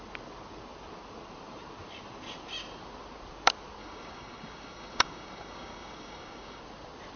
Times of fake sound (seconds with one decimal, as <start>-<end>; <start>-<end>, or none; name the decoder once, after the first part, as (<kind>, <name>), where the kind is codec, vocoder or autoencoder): 3.8-6.6 (codec, DAC)